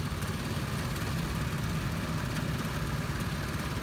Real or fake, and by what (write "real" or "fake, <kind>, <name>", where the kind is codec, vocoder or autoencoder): real